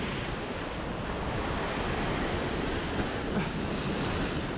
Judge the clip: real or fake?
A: real